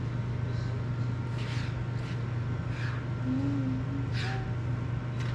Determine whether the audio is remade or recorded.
recorded